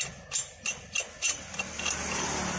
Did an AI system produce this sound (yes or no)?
no